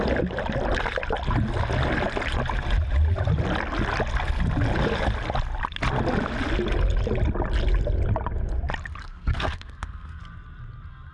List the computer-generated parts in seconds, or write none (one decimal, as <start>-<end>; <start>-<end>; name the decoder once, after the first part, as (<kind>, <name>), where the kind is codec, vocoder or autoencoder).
9.0-10.2 (codec, SNAC)